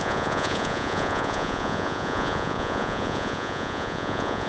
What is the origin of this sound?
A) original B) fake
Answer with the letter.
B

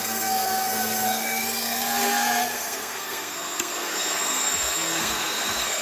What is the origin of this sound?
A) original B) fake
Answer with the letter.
B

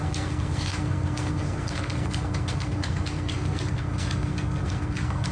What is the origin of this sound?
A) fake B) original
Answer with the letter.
A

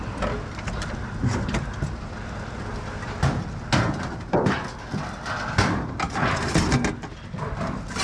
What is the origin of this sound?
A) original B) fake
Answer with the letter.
A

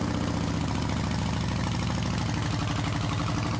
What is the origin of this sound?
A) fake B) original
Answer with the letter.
B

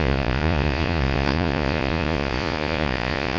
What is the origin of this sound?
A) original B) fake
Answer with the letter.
B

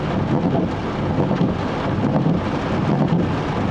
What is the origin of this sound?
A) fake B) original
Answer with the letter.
B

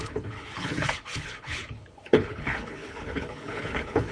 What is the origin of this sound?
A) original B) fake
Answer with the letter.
B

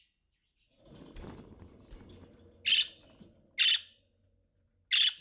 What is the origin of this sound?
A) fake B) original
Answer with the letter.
B